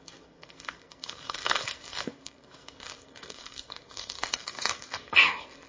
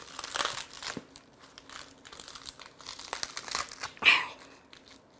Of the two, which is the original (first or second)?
second